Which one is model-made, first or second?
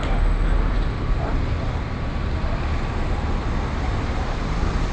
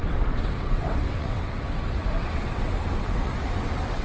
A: second